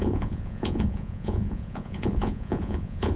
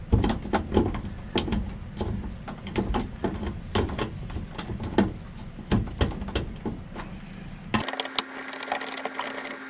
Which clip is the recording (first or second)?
second